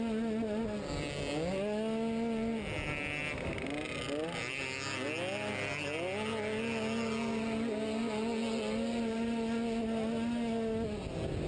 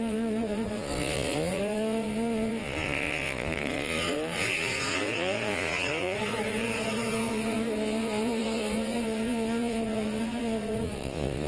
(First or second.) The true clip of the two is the first